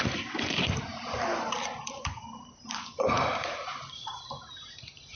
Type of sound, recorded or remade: remade